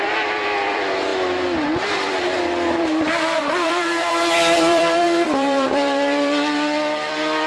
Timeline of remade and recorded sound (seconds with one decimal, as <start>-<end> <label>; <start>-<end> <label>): 0.0-1.1 remade; 1.1-1.9 recorded; 1.9-7.5 remade